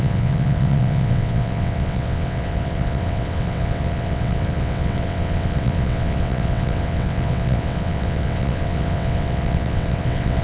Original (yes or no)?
no